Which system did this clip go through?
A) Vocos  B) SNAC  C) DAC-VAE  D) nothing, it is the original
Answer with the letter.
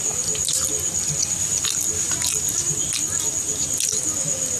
D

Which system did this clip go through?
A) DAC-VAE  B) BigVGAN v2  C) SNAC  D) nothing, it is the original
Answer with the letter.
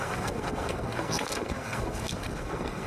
C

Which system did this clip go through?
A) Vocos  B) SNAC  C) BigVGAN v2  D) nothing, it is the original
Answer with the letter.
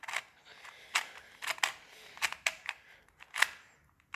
D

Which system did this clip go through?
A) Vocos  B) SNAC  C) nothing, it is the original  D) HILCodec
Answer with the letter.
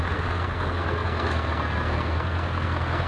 B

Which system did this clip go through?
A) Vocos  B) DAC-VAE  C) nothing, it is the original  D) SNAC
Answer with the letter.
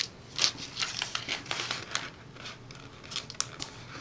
C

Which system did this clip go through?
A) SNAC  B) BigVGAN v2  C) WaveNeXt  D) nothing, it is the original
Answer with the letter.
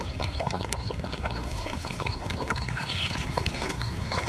A